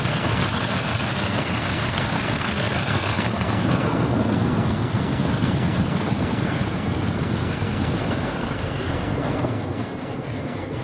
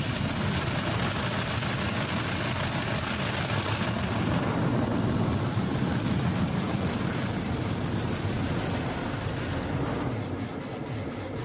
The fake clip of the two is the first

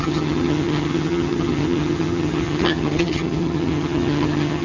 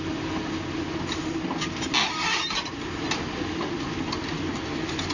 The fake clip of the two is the first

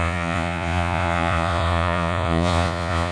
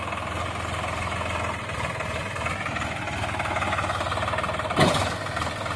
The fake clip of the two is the first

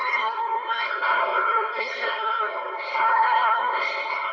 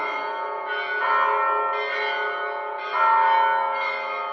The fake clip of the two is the first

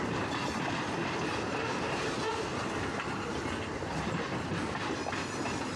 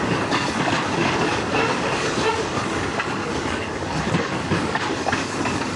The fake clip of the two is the second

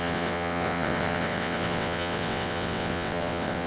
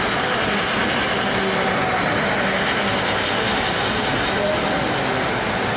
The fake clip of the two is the first